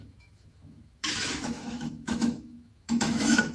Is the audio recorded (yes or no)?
no